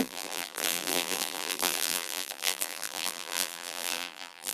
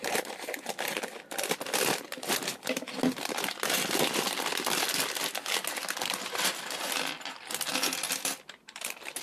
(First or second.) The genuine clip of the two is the second